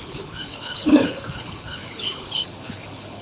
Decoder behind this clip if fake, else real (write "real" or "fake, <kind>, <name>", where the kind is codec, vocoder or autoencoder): fake, codec, HILCodec